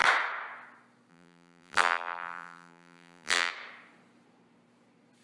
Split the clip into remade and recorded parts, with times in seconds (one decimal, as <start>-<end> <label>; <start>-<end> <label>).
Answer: 0.0-1.1 recorded; 1.1-3.5 remade; 3.5-5.2 recorded

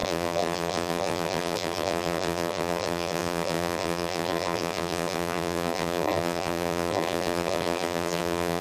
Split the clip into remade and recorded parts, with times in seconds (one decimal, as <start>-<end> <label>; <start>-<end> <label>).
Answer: 0.0-8.6 remade

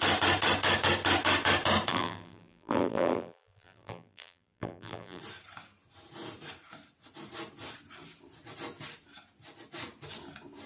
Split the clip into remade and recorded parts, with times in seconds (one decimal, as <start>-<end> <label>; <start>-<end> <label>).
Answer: 0.0-1.9 recorded; 1.9-5.2 remade; 5.2-10.7 recorded

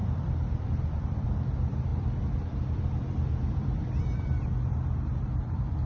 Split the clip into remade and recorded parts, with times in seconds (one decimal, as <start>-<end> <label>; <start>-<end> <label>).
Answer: 0.0-5.9 remade

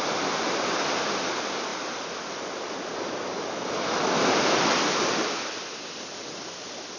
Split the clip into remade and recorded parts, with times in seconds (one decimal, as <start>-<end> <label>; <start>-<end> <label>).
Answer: 0.0-7.0 recorded